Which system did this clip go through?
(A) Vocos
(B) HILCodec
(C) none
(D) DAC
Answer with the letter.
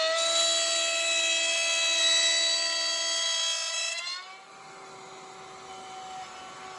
C